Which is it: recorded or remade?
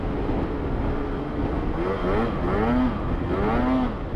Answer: recorded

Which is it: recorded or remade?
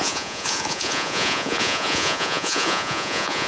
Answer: remade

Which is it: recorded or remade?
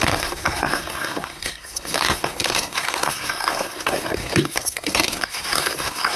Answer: remade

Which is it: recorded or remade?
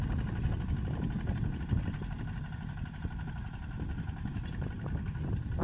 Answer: recorded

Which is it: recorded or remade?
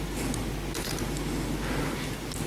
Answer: recorded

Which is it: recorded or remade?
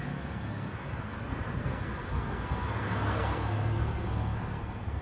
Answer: remade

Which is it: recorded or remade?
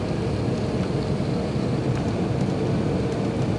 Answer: recorded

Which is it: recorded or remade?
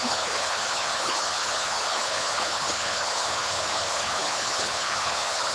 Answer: remade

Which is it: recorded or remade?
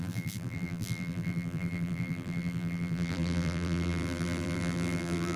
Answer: remade